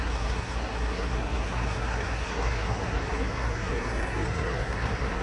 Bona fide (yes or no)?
no